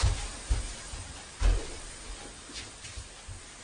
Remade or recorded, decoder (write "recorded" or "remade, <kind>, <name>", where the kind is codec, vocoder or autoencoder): recorded